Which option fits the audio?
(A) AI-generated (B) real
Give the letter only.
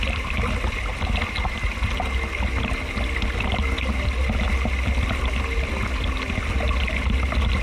B